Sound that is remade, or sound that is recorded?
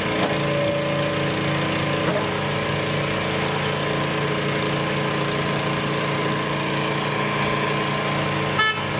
recorded